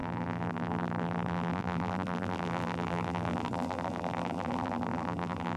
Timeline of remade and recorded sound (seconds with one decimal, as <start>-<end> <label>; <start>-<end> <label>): 0.0-5.6 remade